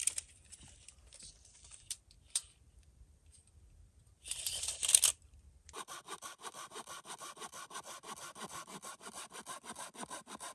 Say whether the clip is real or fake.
fake